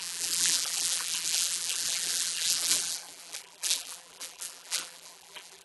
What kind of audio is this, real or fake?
fake